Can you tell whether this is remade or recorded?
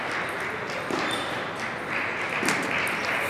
recorded